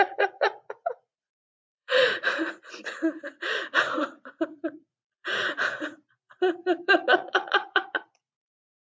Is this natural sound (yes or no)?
no